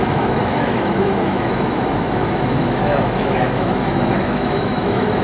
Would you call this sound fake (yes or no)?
yes